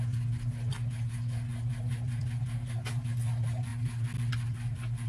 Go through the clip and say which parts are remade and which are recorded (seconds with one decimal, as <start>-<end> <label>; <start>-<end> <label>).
0.0-5.1 recorded